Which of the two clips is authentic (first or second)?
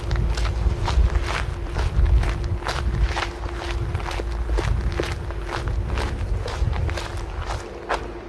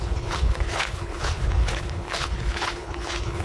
first